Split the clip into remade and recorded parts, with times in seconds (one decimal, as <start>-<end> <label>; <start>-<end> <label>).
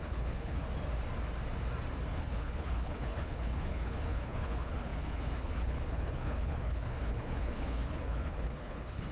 0.0-0.6 remade; 0.6-2.1 recorded; 2.1-9.1 remade